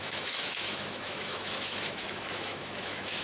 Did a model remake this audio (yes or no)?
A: yes